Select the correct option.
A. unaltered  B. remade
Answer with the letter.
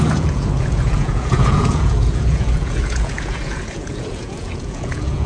B